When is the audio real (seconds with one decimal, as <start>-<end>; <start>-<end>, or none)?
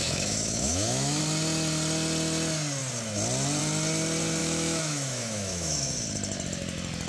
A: 1.2-4.4; 6.0-7.1